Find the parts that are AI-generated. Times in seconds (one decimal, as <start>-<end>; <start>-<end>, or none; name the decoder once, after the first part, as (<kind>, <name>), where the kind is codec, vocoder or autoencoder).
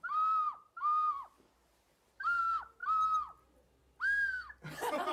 none